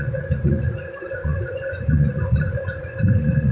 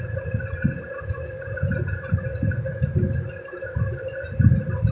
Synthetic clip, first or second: first